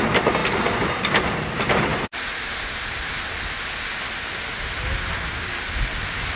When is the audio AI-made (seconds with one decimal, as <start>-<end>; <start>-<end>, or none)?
1.9-3.1